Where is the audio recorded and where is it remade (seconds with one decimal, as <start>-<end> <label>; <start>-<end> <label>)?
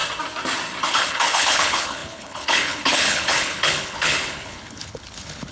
0.0-0.9 recorded; 0.9-5.5 remade